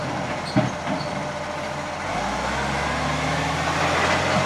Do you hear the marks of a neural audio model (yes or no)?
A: no